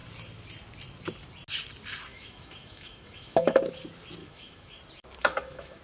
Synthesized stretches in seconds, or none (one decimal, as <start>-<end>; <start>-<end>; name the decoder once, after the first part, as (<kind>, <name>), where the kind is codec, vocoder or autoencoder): 2.1-3.6 (autoencoder, DAC-VAE); 4.2-4.8; 5.2-5.8